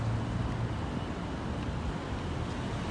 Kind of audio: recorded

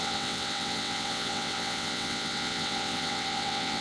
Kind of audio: remade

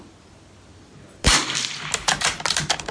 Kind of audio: recorded